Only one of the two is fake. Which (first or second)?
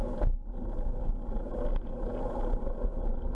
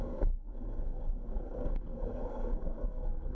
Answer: second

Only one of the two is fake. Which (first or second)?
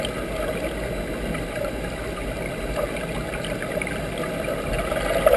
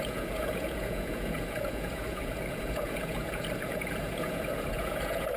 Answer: second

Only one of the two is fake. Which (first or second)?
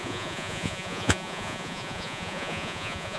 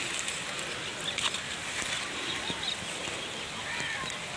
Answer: first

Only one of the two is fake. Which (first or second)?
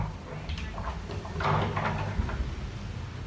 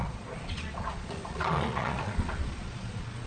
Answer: second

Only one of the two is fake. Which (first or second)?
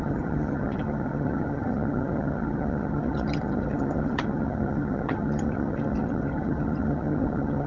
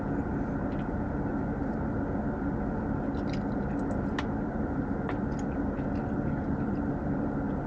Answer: first